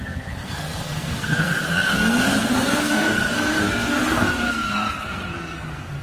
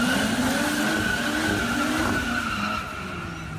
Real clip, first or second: second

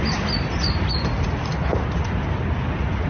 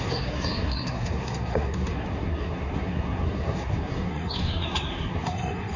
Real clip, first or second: first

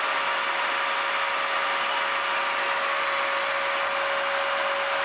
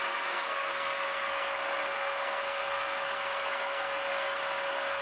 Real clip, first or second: first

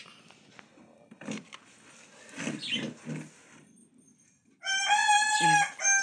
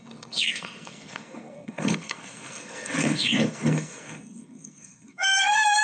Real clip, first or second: first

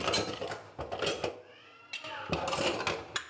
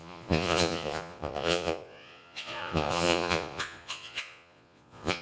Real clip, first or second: first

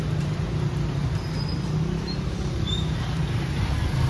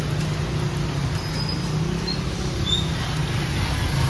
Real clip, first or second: second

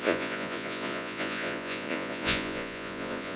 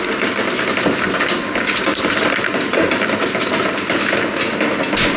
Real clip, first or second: second